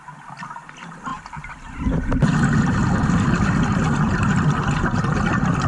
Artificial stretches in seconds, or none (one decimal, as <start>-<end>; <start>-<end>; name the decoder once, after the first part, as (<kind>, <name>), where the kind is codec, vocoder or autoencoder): none